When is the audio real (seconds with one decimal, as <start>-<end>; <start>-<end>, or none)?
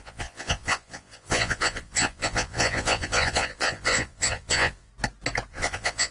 4.9-5.5